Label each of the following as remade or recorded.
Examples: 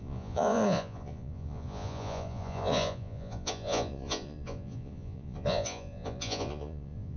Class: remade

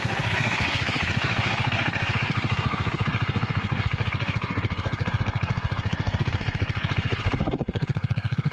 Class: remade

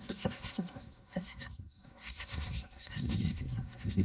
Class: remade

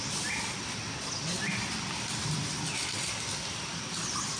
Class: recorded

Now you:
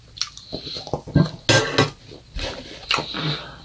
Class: recorded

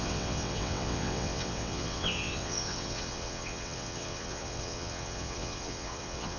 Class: remade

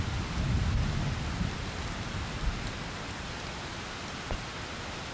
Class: recorded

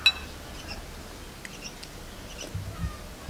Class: recorded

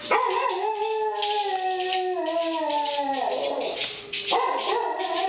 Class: recorded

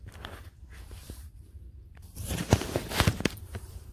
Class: remade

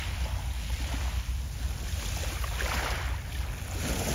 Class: recorded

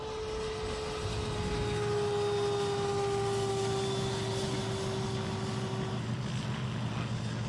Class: recorded